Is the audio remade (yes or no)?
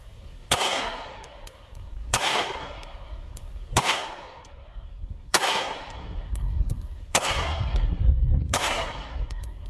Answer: yes